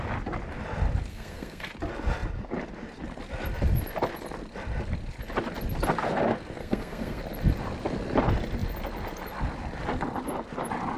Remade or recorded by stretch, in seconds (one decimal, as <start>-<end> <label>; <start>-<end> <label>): 0.0-1.1 recorded; 1.1-1.7 remade; 1.7-6.6 recorded; 6.6-7.2 remade; 7.2-11.0 recorded